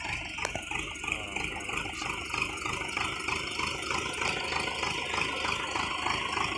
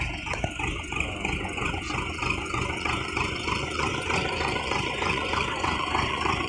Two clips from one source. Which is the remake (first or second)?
second